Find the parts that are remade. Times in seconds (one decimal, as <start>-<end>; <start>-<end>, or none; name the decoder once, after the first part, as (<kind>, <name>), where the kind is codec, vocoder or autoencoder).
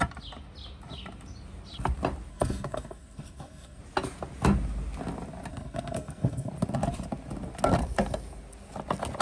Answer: 2.3-3.8 (codec, SNAC); 5.5-6.5